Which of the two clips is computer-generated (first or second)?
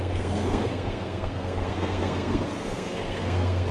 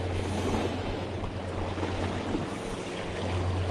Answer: first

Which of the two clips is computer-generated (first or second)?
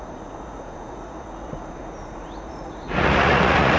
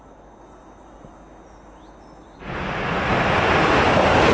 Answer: first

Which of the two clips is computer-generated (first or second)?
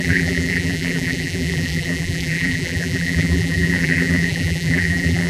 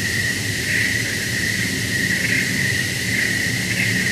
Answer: first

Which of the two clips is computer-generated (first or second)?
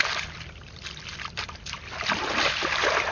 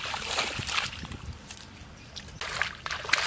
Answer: first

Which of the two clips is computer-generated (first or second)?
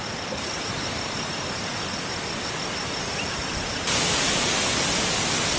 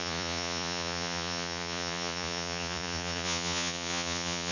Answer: second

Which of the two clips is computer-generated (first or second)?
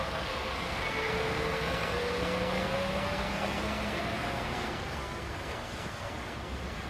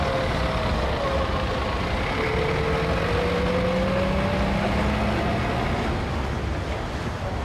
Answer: first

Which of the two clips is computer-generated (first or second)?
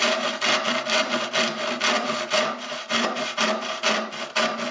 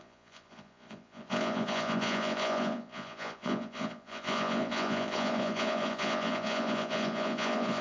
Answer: second